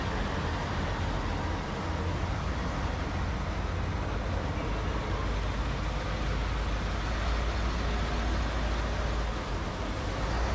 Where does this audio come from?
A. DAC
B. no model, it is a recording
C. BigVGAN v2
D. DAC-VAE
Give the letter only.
B